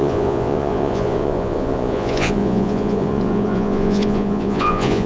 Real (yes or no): no